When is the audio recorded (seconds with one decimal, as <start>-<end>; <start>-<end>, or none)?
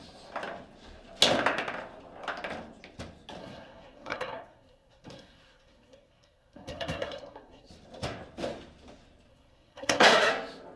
0.0-3.4; 7.7-9.3; 10.3-10.8